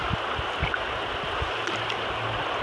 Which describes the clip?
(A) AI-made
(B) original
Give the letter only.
B